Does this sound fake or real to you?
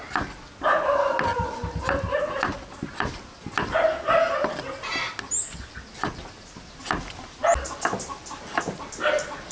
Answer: real